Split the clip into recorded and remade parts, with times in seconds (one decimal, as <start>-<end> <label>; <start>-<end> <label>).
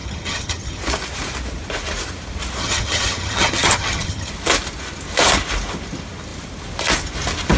0.0-0.8 remade; 0.8-2.6 recorded; 2.6-4.3 remade; 4.3-7.6 recorded